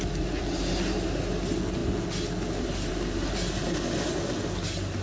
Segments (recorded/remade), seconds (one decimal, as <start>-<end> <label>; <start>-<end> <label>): 0.0-5.0 recorded